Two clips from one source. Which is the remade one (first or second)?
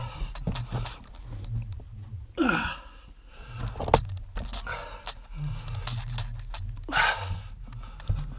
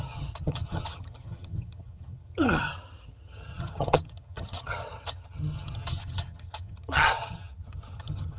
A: second